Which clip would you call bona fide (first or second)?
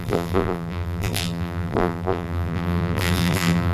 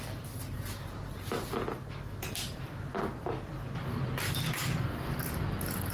second